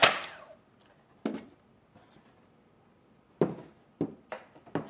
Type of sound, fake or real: real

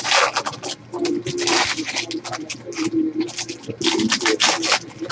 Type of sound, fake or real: real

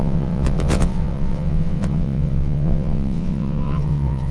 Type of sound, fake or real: fake